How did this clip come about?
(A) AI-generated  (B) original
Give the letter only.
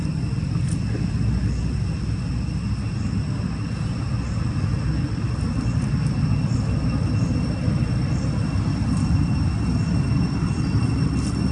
B